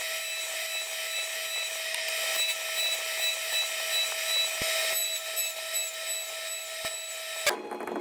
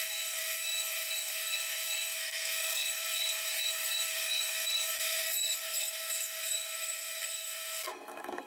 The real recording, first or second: first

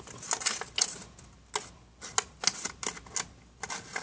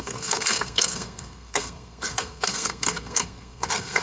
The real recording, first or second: first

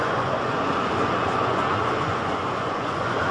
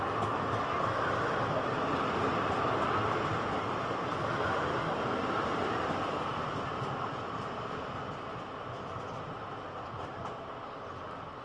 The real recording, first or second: second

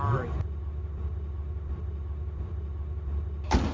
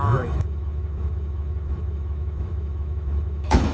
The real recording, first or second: first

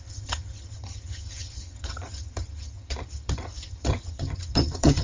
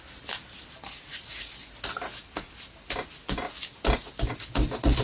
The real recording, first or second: second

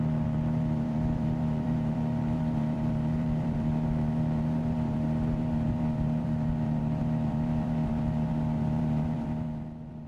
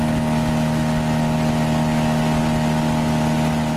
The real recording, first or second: second